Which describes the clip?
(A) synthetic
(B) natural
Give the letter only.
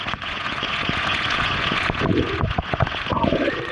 A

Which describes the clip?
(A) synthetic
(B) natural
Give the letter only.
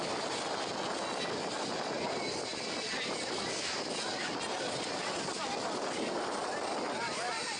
B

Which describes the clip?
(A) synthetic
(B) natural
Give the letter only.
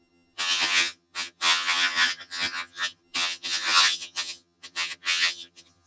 A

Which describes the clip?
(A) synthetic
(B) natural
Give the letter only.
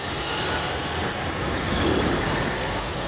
B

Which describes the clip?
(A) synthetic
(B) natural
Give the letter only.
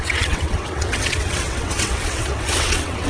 A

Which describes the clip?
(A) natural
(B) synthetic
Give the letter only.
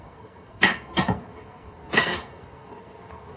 B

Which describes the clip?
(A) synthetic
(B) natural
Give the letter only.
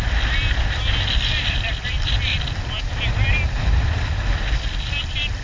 B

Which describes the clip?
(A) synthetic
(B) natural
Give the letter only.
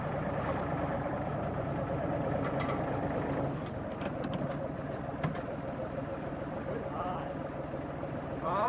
A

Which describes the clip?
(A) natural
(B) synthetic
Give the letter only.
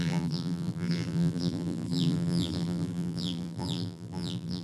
B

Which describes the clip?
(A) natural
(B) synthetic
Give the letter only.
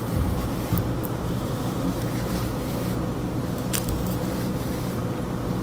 B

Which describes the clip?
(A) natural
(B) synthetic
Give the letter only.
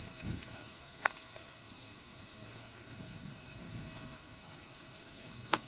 B